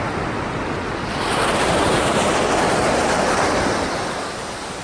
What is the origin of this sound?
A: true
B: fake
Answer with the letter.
A